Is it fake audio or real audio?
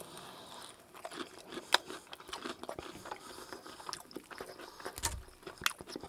real